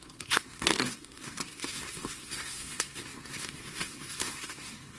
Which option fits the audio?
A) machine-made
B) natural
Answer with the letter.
A